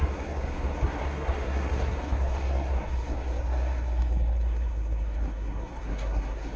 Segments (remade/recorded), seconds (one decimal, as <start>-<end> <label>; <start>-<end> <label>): 0.0-6.6 remade